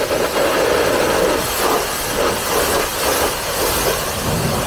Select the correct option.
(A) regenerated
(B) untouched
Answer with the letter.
B